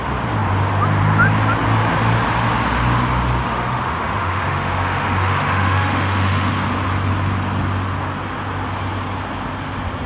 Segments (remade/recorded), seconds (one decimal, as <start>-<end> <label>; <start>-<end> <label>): 0.0-3.4 recorded; 3.4-6.5 remade; 6.5-10.1 recorded